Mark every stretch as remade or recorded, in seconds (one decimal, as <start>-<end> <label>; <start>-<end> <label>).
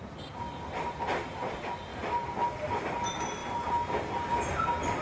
0.0-5.0 recorded